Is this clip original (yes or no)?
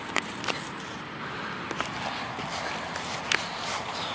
yes